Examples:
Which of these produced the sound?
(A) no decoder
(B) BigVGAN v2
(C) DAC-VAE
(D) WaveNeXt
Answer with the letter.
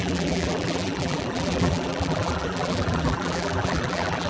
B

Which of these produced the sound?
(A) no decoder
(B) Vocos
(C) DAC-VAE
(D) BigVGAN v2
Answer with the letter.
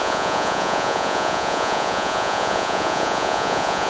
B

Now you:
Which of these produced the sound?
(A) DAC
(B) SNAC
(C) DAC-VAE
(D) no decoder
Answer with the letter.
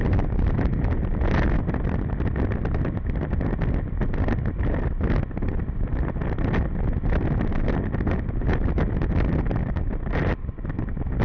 D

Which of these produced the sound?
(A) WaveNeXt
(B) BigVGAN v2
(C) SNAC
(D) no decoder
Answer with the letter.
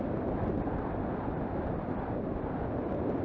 D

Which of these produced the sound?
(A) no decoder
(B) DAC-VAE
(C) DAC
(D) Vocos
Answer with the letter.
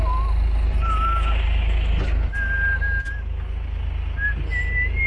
A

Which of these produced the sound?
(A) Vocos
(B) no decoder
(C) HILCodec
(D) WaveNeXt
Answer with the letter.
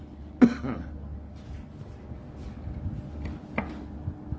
B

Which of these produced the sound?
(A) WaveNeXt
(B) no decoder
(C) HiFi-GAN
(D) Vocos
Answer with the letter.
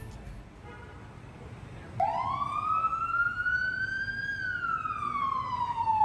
B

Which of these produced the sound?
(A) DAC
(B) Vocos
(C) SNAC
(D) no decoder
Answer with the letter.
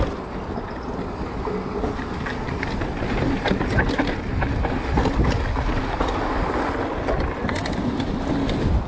D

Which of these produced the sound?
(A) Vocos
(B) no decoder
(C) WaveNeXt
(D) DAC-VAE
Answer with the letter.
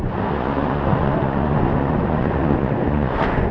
A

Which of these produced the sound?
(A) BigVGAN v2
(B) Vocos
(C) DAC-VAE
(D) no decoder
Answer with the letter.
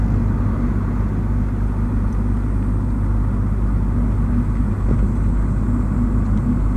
D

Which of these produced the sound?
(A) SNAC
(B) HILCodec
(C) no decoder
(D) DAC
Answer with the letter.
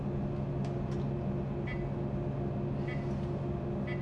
C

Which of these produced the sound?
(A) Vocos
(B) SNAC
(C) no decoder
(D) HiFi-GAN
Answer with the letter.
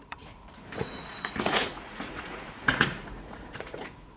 A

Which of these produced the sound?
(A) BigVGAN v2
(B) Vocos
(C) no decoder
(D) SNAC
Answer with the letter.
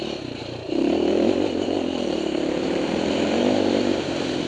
A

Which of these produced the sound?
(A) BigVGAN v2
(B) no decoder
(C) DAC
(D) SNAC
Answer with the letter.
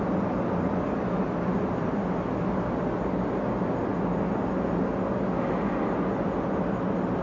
B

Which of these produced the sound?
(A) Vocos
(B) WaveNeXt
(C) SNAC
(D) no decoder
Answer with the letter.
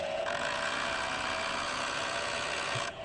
A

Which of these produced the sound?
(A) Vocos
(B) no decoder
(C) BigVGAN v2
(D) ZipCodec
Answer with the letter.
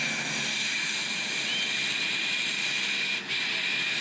B